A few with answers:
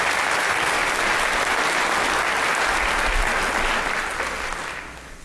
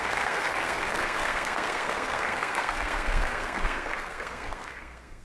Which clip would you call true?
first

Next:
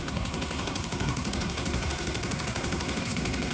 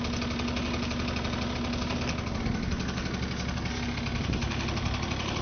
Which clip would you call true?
second